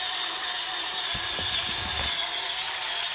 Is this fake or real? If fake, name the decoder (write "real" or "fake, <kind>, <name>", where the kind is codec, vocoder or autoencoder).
real